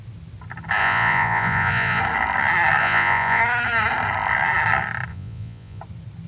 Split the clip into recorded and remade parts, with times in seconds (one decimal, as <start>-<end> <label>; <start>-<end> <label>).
0.0-0.8 recorded; 0.8-2.0 remade; 2.0-2.8 recorded; 2.8-3.4 remade; 3.4-5.1 recorded; 5.1-5.8 remade; 5.8-6.3 recorded